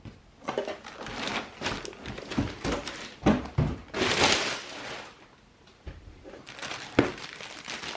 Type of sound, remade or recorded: recorded